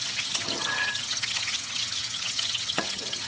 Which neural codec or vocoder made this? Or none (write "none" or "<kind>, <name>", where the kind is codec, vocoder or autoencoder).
vocoder, HiFi-GAN